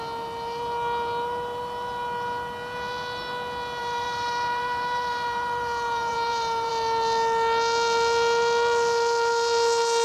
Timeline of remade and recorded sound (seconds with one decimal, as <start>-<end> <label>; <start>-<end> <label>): 0.0-3.8 recorded; 3.8-6.7 remade; 6.7-10.0 recorded